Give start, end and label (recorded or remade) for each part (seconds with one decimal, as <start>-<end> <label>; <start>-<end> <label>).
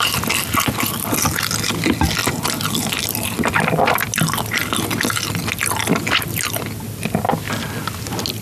0.0-2.2 recorded; 2.2-3.0 remade; 3.0-8.4 recorded